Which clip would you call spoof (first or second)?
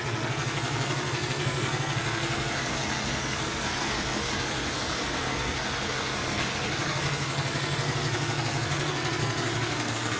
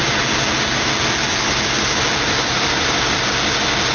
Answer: first